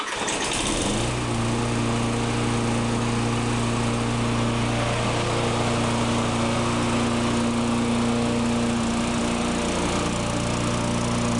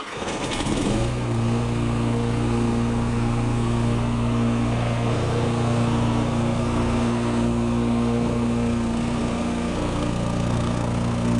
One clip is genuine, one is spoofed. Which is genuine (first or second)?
first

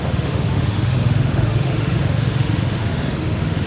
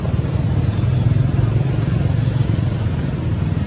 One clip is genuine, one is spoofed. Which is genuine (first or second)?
second